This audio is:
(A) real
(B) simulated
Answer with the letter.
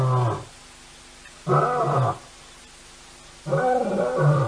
A